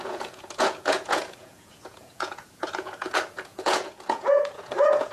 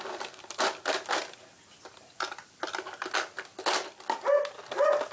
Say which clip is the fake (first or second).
first